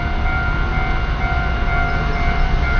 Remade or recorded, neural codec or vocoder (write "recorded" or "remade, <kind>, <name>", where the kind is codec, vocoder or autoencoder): recorded